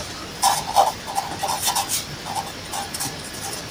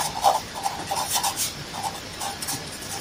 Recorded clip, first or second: first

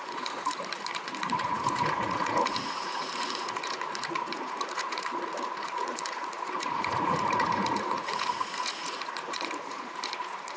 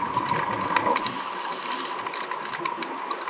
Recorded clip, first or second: second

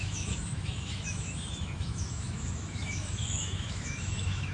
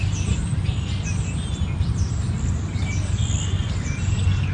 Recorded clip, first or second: second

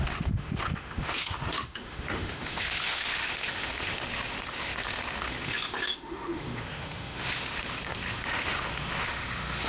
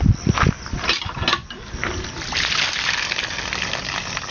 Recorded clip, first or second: second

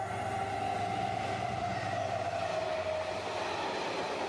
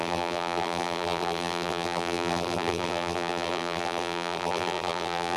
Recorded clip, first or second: first